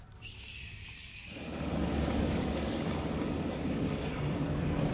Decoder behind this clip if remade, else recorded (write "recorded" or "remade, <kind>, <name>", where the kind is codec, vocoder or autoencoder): remade, codec, DAC